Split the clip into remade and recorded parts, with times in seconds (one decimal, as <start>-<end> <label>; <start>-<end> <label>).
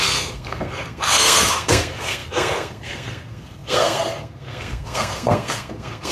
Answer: 0.0-6.1 remade